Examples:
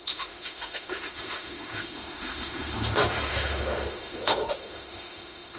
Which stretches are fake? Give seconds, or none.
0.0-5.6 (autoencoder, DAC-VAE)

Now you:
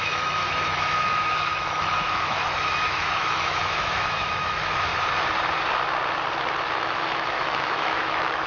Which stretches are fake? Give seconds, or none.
0.0-4.9 (autoencoder, DAC-VAE); 6.7-8.5

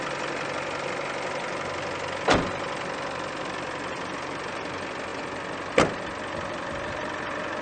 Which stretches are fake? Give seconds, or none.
none

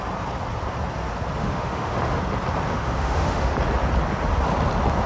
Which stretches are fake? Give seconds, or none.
1.4-2.2 (autoencoder, DAC-VAE); 2.7-3.5

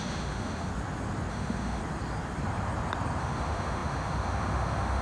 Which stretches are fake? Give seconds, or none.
0.0-0.7 (autoencoder, DAC-VAE); 1.3-1.8; 3.2-5.0

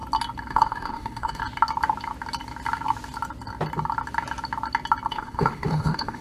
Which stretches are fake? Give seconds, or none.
0.5-1.4 (autoencoder, DAC-VAE); 5.1-6.2